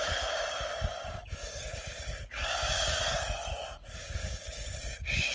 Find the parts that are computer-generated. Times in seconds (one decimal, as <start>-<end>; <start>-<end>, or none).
0.9-3.0; 3.8-5.3